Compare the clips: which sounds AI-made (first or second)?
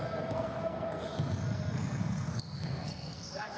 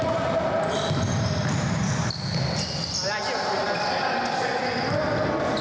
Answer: first